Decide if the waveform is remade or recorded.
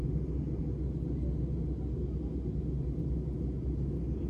recorded